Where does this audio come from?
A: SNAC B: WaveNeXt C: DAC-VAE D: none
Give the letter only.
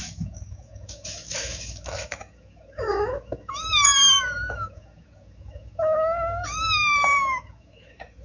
C